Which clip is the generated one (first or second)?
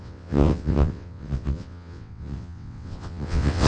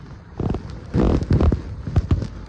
first